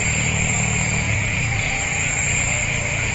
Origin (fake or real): fake